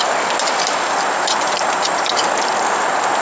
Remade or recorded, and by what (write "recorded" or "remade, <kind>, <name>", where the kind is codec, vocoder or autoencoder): recorded